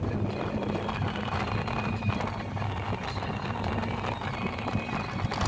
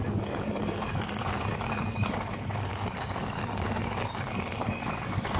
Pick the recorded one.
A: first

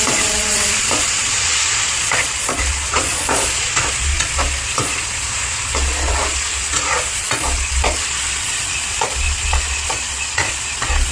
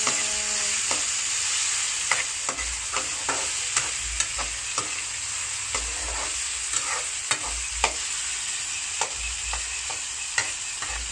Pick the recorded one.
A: second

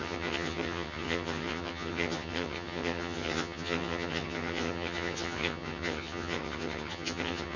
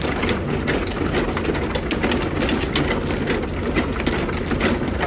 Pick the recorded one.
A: second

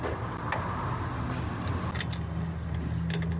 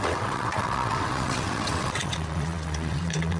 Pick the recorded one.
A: first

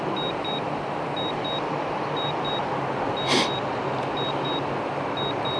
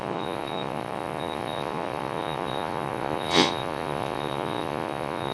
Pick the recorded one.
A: first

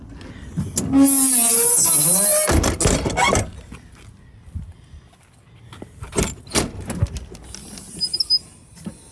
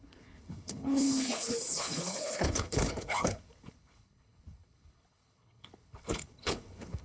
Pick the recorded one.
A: first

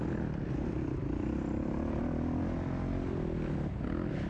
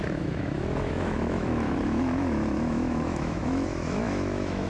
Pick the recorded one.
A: first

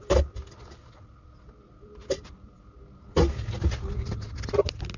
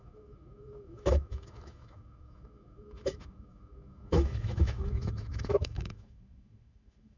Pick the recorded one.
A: first